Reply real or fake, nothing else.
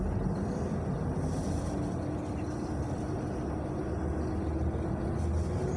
real